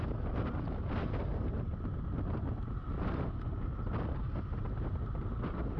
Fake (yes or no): no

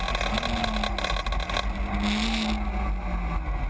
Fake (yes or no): no